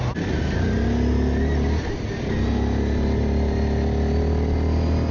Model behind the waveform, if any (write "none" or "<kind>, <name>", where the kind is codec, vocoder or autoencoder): none